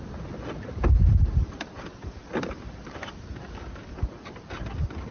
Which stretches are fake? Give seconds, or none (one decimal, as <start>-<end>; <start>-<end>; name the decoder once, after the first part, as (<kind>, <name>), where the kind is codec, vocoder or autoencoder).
none